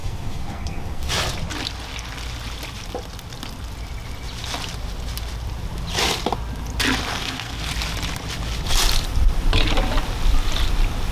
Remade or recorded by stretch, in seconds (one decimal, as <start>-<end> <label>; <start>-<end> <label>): 0.0-1.1 remade; 1.1-7.1 recorded; 7.1-7.7 remade; 7.7-11.1 recorded